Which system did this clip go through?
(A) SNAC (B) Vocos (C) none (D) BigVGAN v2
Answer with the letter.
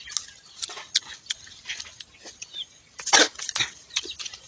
C